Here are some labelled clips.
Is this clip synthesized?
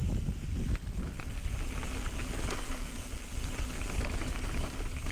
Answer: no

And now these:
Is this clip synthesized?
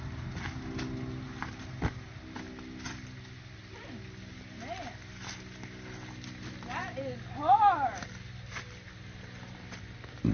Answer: no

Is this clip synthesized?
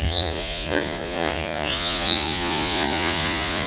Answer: yes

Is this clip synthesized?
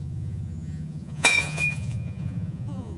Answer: yes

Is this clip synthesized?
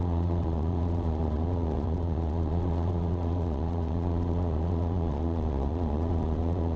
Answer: yes